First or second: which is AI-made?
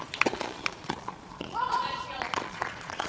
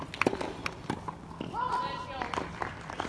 first